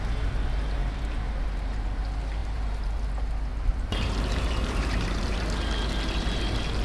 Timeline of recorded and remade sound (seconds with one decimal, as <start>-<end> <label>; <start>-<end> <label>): 0.0-0.8 recorded; 0.8-2.0 remade; 2.0-2.4 recorded; 2.4-3.1 remade; 3.1-3.5 recorded; 3.5-5.4 remade; 5.4-6.8 recorded